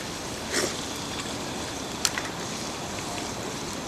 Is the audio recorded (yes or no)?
no